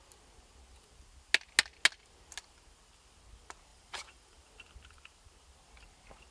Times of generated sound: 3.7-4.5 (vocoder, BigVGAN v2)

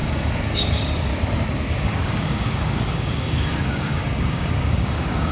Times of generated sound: 0.0-1.1 (codec, DAC); 1.7-5.3

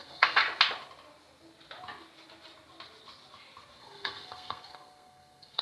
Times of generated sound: 0.0-0.4 (codec, SNAC); 3.8-5.6

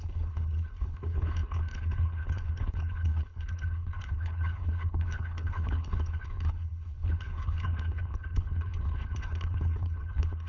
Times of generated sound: 0.0-10.5 (codec, HILCodec)